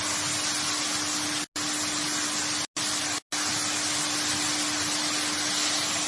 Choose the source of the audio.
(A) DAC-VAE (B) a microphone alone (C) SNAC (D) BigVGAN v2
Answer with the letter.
B